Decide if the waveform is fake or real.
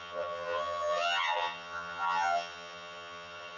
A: fake